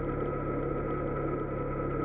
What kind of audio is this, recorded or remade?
recorded